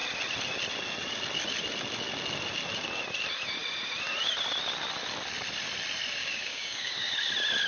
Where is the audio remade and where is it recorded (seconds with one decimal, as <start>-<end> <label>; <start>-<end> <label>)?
0.0-6.2 recorded; 6.2-7.3 remade; 7.3-7.7 recorded